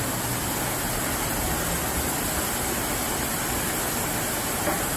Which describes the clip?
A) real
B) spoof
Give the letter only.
A